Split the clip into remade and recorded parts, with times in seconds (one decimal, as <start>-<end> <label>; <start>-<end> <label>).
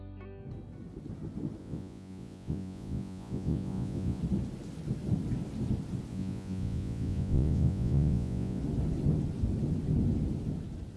0.0-1.6 recorded; 1.6-4.2 remade; 4.2-6.1 recorded; 6.1-8.6 remade; 8.6-11.0 recorded